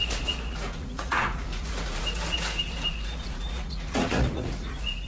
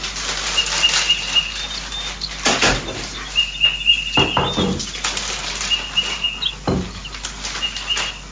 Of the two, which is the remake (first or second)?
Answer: first